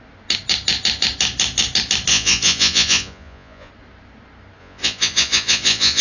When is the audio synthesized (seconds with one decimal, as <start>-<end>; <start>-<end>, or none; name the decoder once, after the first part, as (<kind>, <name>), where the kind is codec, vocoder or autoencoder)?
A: 2.1-3.7 (vocoder, Vocos); 4.6-6.0